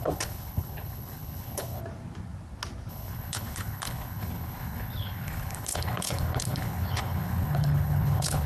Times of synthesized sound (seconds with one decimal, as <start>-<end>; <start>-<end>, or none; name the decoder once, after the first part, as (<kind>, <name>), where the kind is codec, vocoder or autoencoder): 0.0-1.8 (codec, HILCodec); 2.9-8.5